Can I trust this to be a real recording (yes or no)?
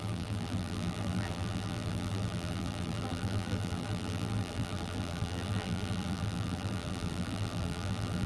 no